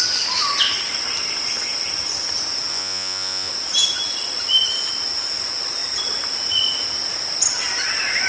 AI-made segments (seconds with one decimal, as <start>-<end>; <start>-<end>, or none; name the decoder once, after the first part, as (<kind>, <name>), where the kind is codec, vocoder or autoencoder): 2.7-3.5 (vocoder, Vocos)